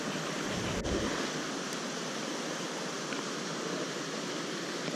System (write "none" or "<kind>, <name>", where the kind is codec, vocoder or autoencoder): none